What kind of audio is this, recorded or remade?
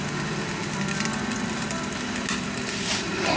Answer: recorded